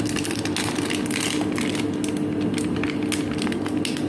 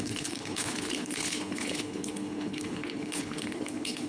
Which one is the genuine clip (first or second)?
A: first